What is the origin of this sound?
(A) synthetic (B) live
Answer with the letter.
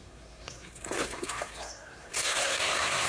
A